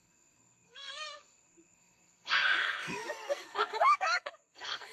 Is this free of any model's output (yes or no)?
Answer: no